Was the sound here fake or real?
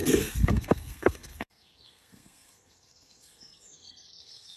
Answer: fake